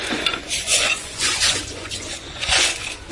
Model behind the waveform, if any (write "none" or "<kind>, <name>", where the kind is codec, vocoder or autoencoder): vocoder, Vocos